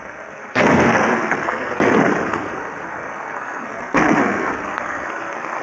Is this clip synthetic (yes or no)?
yes